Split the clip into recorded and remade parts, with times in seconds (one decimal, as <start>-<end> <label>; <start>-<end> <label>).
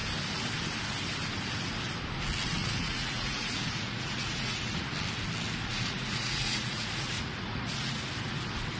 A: 0.0-2.6 recorded; 2.6-4.9 remade; 4.9-5.7 recorded; 5.7-8.1 remade; 8.1-8.8 recorded